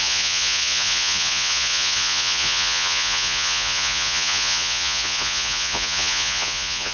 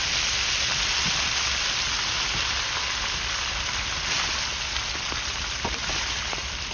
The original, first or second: second